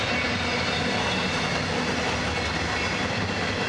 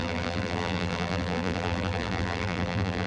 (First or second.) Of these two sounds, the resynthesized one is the second